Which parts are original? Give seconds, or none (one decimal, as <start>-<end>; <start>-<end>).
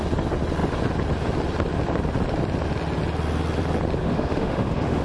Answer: 0.0-4.0